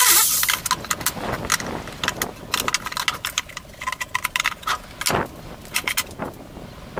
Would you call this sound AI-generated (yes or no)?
no